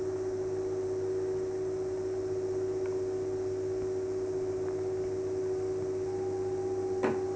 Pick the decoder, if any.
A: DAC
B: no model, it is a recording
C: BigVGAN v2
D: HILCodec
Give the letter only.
B